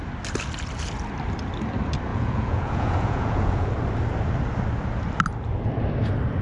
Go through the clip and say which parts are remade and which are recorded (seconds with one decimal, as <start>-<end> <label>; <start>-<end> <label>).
0.0-2.1 recorded; 2.1-3.7 remade; 3.7-6.4 recorded